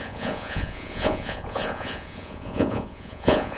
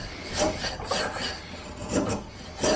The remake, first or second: first